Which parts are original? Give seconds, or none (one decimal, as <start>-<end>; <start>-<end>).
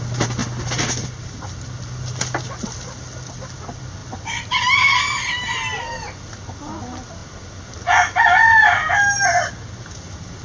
0.0-10.4